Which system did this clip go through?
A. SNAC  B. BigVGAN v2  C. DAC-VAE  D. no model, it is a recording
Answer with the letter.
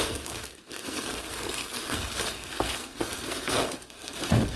A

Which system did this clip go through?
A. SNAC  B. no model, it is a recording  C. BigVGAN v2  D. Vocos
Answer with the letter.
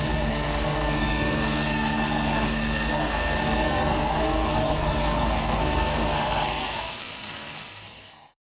A